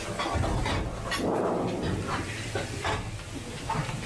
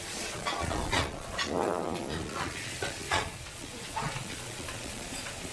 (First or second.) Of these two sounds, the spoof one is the second